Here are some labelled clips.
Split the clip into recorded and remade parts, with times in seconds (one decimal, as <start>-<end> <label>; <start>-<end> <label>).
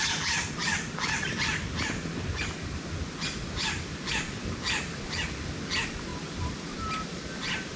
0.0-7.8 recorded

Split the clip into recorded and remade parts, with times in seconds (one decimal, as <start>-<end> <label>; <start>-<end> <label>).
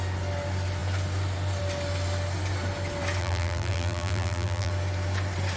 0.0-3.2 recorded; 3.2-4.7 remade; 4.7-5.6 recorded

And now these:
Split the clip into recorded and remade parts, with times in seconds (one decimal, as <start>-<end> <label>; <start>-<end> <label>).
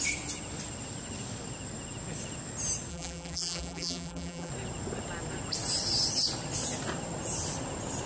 0.0-2.9 recorded; 2.9-4.5 remade; 4.5-8.1 recorded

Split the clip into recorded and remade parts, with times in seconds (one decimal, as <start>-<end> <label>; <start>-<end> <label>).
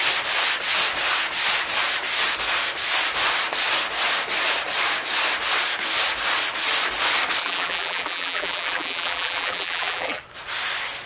0.0-7.4 recorded; 7.4-10.2 remade; 10.2-11.1 recorded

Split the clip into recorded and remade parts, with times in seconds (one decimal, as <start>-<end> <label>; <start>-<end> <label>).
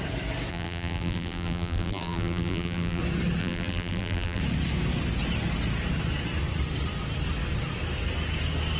0.0-0.5 recorded; 0.5-3.0 remade; 3.0-3.4 recorded; 3.4-4.4 remade; 4.4-8.8 recorded